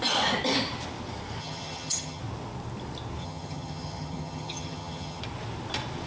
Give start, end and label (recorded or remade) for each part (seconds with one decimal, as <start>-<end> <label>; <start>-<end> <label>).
0.0-1.4 recorded; 1.4-2.2 remade; 2.2-3.2 recorded; 3.2-5.2 remade; 5.2-6.1 recorded